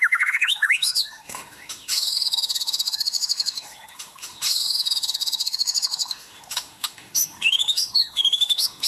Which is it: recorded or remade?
remade